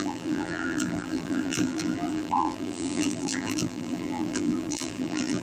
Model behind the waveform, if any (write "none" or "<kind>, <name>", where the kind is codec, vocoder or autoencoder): vocoder, BigVGAN v2